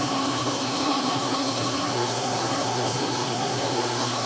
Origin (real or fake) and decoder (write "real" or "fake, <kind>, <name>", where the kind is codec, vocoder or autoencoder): fake, codec, SNAC